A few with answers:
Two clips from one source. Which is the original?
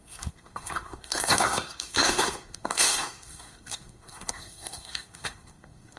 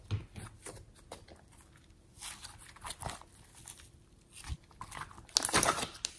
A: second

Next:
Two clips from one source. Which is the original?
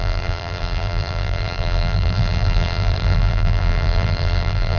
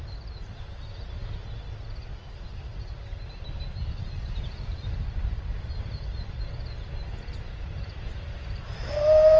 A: second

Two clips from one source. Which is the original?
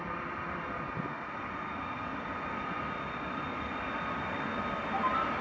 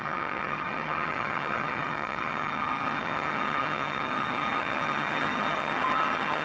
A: first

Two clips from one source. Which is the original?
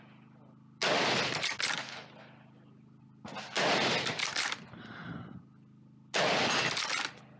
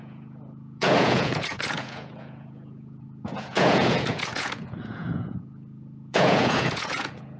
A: first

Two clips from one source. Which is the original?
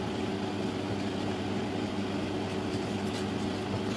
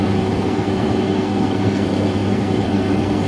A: first